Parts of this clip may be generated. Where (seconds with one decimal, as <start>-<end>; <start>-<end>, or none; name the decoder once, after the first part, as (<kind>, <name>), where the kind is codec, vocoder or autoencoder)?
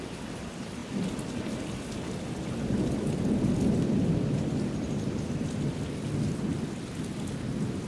none